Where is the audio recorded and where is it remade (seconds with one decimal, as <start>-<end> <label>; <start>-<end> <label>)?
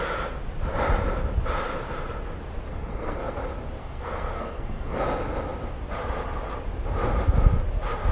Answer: 0.0-2.7 recorded; 2.7-3.4 remade; 3.4-3.8 recorded; 3.8-5.0 remade; 5.0-8.1 recorded